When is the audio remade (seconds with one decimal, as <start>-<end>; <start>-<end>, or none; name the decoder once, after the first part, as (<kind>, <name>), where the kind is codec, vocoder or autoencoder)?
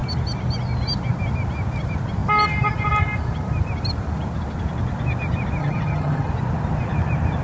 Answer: 5.6-6.3 (vocoder, HiFi-GAN)